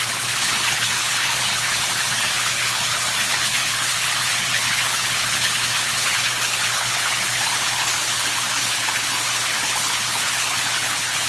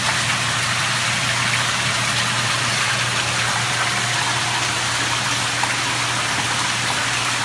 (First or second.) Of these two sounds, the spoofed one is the first